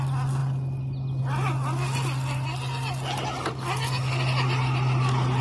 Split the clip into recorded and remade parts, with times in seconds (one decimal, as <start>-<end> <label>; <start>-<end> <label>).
0.0-5.4 recorded